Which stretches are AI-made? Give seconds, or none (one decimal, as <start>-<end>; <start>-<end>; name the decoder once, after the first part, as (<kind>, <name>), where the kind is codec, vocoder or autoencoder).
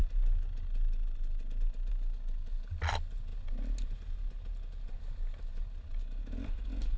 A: none